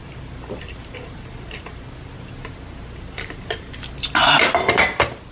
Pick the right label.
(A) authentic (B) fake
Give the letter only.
B